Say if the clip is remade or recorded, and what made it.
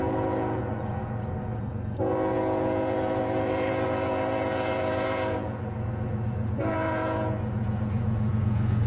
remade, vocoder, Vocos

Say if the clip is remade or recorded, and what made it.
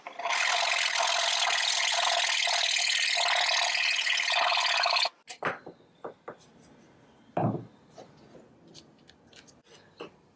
recorded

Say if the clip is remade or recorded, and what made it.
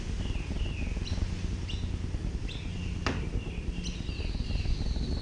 recorded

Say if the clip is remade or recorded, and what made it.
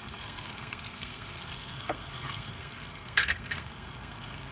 remade, codec, SNAC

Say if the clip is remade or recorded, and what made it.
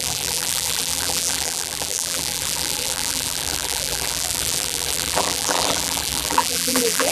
remade, vocoder, BigVGAN v2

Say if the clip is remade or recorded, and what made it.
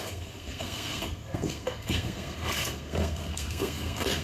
remade, codec, SNAC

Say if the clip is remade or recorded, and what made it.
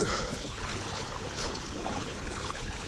remade, codec, HILCodec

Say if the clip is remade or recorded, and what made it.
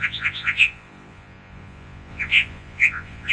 remade, vocoder, Vocos